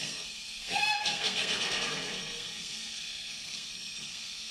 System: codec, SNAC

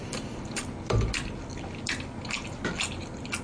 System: none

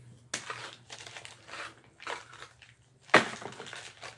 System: none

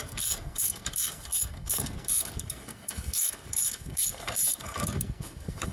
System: codec, SNAC